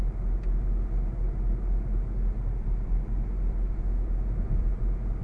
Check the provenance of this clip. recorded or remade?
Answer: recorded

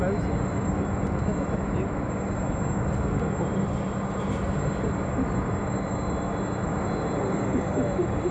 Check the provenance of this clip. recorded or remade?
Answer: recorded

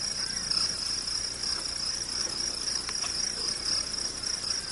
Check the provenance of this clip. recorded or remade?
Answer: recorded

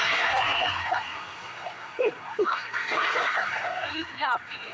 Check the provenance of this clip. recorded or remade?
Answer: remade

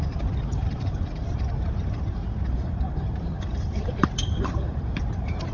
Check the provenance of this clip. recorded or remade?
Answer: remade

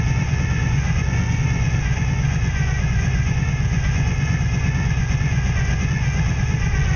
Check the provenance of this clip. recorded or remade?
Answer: remade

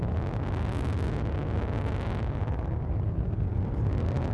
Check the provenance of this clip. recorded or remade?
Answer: recorded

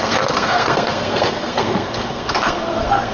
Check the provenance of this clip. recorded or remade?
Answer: remade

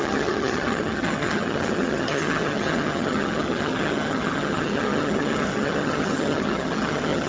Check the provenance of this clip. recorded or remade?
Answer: remade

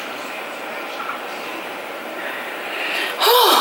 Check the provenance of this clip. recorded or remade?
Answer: remade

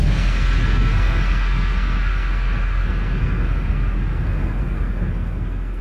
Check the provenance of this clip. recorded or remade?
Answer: remade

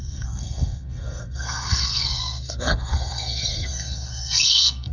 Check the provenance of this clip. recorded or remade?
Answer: remade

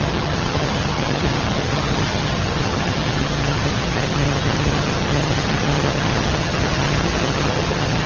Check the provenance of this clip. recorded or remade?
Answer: remade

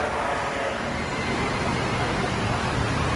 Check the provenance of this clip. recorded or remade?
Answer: recorded